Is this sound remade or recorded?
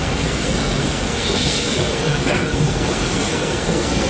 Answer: remade